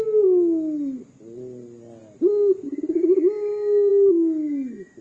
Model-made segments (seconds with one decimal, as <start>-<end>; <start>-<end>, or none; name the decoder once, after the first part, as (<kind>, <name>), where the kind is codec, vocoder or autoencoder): none